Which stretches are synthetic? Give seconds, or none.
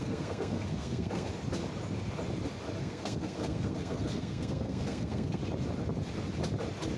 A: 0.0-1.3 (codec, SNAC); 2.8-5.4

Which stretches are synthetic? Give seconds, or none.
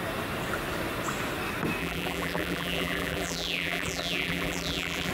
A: 1.8-5.1 (vocoder, BigVGAN v2)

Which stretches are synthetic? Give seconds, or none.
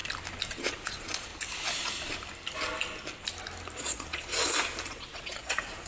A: 0.6-1.3 (vocoder, Vocos); 3.8-4.3; 4.9-5.9